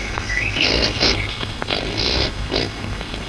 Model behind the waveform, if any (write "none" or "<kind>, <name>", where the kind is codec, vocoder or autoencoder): codec, SNAC